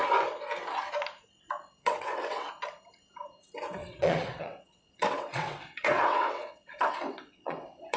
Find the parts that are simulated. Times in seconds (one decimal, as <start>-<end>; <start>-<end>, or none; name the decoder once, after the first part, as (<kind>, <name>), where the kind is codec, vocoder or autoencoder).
1.8-2.5 (vocoder, WaveNeXt); 3.8-8.0